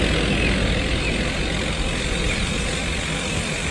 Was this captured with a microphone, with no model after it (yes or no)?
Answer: yes